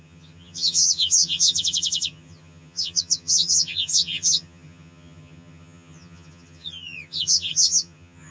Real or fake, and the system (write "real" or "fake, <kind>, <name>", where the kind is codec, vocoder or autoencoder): fake, vocoder, HiFi-GAN